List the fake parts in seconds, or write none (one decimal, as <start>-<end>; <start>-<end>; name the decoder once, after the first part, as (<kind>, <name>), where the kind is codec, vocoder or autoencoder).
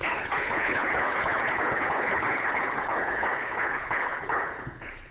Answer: 0.0-5.1 (codec, HILCodec)